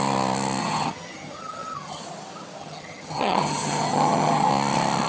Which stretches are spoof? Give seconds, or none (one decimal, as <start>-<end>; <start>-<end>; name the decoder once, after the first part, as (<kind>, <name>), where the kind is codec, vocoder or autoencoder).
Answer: 0.6-2.0 (vocoder, HiFi-GAN); 2.6-4.5